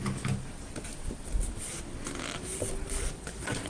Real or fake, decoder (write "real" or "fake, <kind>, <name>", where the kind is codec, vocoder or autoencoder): real